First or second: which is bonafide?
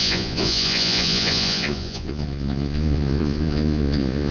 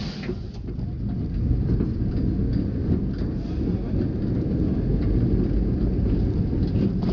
second